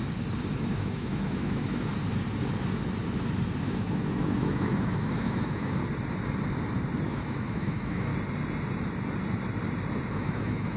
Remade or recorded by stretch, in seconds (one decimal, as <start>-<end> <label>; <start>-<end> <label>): 0.0-0.7 recorded; 0.7-1.9 remade; 1.9-3.6 recorded; 3.6-5.8 remade; 5.8-7.1 recorded; 7.1-8.1 remade; 8.1-10.1 recorded; 10.1-10.8 remade